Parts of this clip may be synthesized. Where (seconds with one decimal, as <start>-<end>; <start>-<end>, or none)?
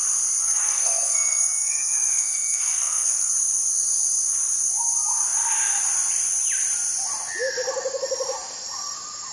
0.4-3.3